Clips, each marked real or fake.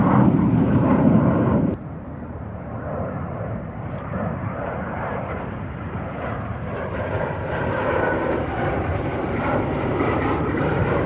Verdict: fake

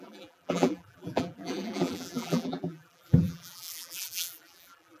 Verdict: fake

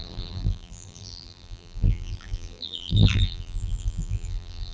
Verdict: fake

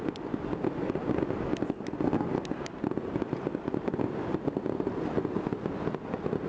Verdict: real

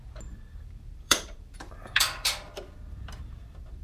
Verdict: fake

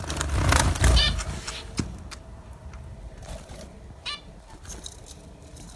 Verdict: fake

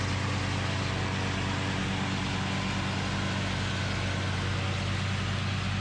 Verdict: real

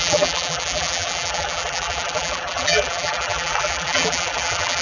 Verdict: fake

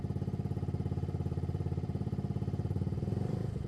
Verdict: fake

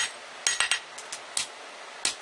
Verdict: real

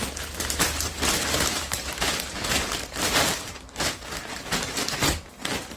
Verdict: fake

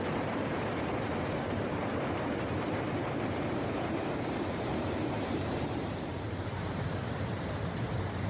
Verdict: fake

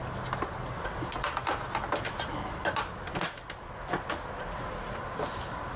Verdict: real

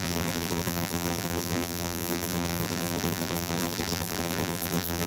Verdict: fake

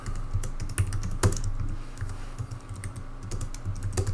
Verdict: real